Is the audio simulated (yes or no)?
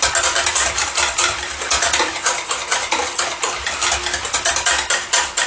no